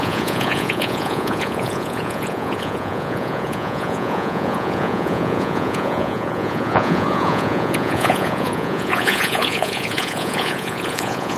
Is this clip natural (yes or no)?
no